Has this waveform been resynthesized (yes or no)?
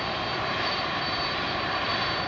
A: no